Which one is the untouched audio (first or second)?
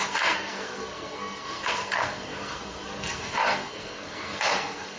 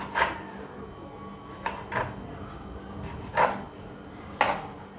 second